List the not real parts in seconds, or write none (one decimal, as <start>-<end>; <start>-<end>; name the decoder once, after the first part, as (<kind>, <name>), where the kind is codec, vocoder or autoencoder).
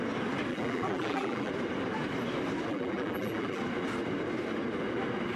0.5-1.5 (vocoder, BigVGAN v2); 2.7-3.6